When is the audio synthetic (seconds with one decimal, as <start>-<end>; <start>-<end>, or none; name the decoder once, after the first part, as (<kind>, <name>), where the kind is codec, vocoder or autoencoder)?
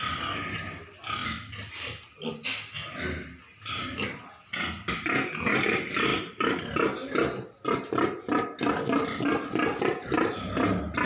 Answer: none